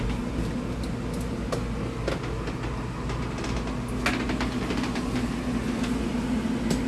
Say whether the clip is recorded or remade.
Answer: recorded